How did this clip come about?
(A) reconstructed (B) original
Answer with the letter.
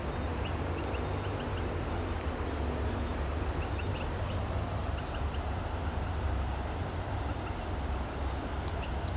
B